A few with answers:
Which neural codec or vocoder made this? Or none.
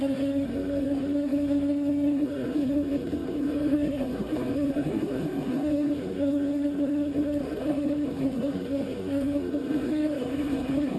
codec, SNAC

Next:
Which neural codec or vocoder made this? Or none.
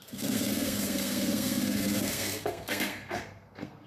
codec, SNAC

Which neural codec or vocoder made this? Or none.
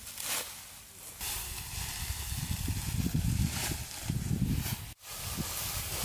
none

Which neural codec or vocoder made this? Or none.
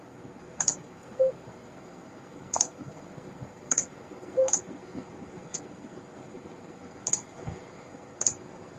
codec, SNAC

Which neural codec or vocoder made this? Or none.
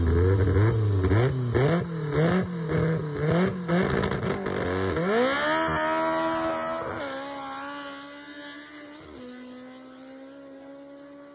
none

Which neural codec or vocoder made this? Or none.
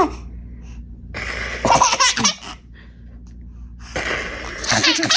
none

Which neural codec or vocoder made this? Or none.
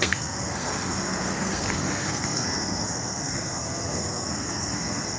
codec, SNAC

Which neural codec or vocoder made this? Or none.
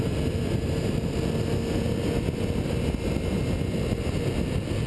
none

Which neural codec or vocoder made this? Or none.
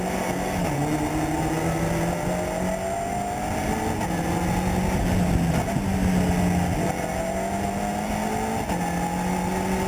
none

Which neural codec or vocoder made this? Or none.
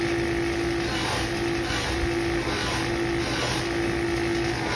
none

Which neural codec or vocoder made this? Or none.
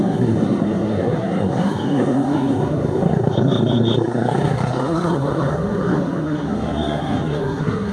codec, SNAC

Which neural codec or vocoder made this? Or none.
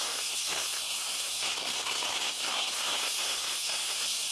codec, SNAC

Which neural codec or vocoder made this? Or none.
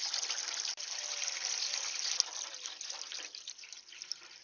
none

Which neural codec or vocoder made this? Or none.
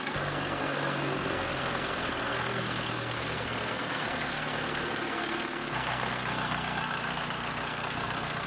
codec, SNAC